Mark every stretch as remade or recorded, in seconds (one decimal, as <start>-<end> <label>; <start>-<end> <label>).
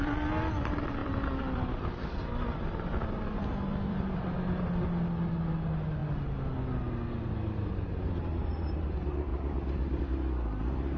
0.0-1.0 recorded; 1.0-3.2 remade; 3.2-3.7 recorded; 3.7-4.9 remade; 4.9-11.0 recorded